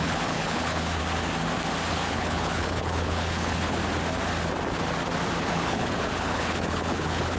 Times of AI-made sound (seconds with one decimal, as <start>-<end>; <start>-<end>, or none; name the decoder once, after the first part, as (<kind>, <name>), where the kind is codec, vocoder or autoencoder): 0.0-1.0 (codec, HILCodec); 1.9-3.8; 5.4-7.4